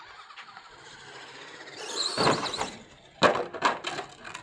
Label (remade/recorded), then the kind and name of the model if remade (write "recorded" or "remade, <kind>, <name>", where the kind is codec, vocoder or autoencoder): recorded